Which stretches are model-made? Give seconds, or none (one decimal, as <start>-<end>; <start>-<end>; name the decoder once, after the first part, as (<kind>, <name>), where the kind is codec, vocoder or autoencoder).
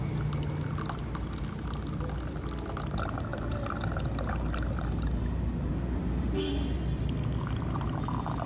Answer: none